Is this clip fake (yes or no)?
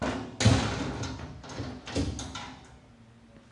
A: no